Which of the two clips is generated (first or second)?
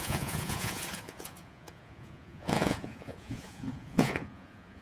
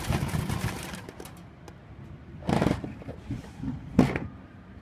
first